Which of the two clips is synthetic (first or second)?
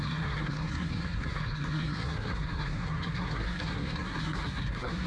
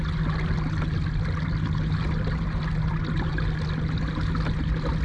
first